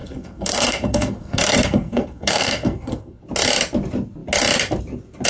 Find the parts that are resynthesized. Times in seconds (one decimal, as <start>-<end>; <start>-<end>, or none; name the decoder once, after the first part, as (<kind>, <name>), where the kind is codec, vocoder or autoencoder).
0.0-3.2 (codec, SNAC)